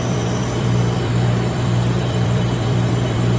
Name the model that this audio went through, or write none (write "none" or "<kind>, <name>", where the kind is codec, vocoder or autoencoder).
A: vocoder, BigVGAN v2